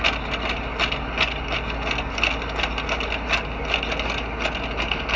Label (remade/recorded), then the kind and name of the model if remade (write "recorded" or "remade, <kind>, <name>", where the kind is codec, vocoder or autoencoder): recorded